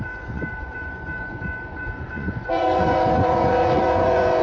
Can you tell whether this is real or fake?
fake